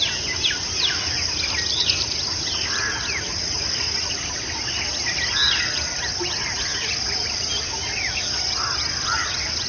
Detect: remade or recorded recorded